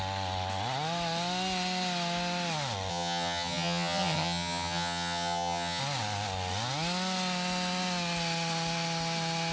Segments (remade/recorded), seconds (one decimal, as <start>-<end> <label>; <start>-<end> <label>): 0.0-2.9 recorded; 2.9-5.8 remade; 5.8-9.5 recorded